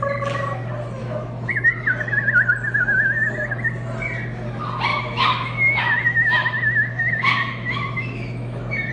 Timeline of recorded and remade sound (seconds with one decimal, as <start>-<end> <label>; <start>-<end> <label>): 0.0-1.0 recorded; 1.0-1.5 remade; 1.5-4.9 recorded; 4.9-8.9 remade